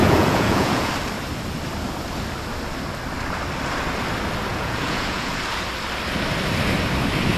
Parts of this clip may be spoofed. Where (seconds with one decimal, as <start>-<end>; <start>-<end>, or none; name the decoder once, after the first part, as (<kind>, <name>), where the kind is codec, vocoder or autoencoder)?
0.0-0.9 (vocoder, Vocos); 4.5-5.4